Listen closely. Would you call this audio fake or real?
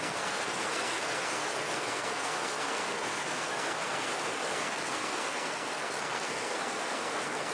fake